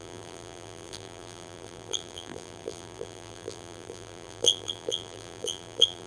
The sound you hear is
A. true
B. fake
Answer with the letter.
B